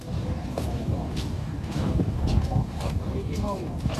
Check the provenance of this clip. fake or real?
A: fake